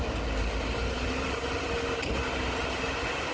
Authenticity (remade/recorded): recorded